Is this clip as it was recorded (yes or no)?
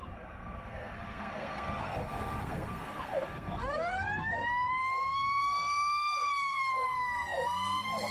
no